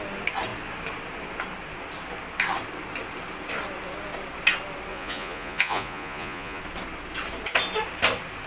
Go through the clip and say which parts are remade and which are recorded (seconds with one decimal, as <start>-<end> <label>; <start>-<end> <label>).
0.0-4.9 recorded; 4.9-6.6 remade; 6.6-8.5 recorded